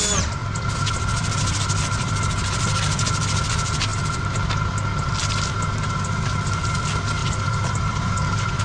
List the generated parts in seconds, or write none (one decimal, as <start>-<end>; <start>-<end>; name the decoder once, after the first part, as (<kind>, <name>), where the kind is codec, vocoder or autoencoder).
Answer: 0.0-3.9 (vocoder, BigVGAN v2); 6.5-8.6